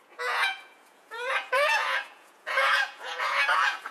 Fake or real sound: fake